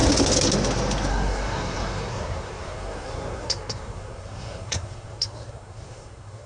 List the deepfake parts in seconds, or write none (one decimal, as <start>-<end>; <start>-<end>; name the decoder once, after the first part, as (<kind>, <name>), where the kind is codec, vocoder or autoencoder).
1.1-6.5 (codec, SNAC)